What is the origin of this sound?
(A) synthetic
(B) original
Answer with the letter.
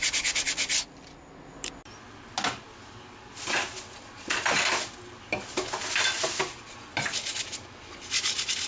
B